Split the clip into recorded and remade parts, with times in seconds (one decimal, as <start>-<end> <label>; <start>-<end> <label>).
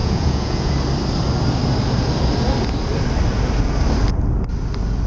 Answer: 0.0-0.7 remade; 0.7-5.1 recorded